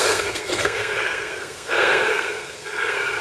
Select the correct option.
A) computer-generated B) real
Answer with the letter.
A